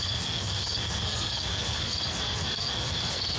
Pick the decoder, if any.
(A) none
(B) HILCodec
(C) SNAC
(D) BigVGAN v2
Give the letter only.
C